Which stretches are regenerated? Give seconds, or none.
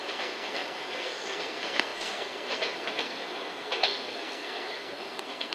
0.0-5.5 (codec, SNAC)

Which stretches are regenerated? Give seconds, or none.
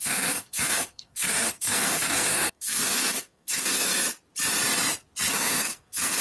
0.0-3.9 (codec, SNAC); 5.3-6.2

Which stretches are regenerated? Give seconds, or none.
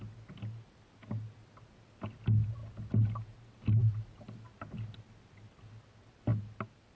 none